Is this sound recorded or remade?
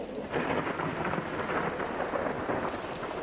recorded